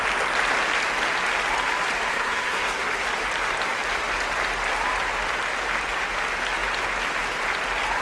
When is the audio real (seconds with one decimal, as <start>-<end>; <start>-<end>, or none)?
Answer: 0.0-2.1; 2.8-8.0